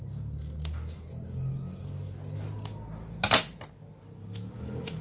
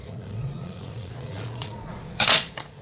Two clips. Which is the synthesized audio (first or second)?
second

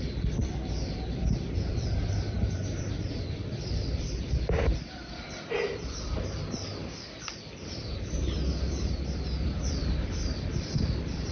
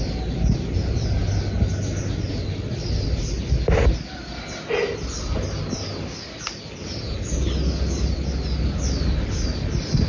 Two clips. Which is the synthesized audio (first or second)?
first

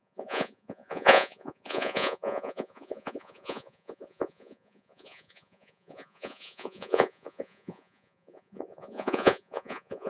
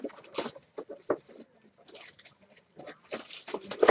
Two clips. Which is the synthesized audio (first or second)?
first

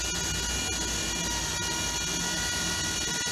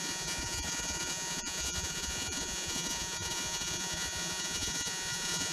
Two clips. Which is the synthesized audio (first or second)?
second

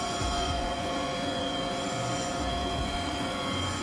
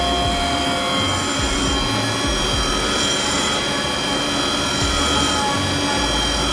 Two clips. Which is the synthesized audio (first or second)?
first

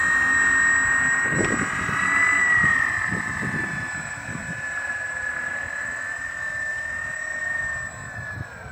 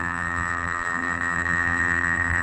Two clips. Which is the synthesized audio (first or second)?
second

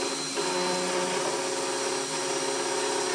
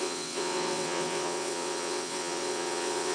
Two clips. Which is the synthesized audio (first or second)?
second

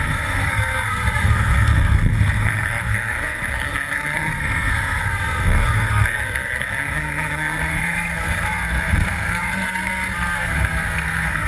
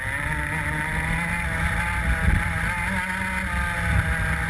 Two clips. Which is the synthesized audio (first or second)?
first